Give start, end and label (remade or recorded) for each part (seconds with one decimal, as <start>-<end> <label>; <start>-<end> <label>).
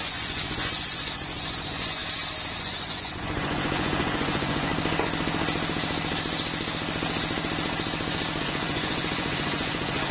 0.0-2.0 remade; 2.0-2.6 recorded; 2.6-4.7 remade; 4.7-8.4 recorded; 8.4-10.1 remade